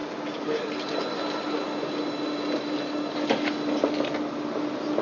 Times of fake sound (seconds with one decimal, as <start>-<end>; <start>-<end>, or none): none